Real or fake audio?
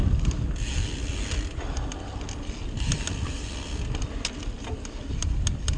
real